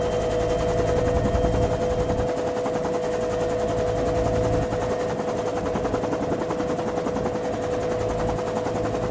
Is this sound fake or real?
real